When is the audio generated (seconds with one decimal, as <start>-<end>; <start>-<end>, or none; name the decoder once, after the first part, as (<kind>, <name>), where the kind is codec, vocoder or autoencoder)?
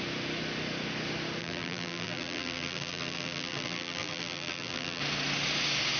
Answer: 1.4-5.0 (vocoder, BigVGAN v2)